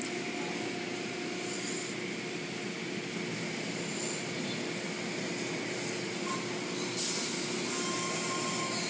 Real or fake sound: real